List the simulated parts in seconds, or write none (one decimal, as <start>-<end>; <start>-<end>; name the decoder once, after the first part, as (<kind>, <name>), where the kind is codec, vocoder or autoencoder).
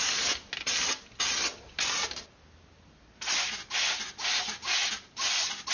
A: none